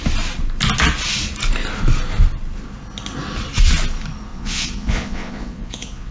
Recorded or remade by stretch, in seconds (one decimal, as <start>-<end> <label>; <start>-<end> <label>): 0.0-4.3 recorded; 4.3-6.1 remade